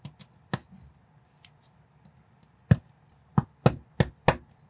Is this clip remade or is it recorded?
recorded